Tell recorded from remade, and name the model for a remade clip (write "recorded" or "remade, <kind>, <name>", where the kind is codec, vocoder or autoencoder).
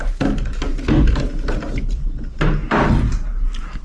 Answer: recorded